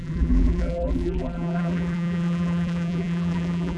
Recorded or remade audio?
remade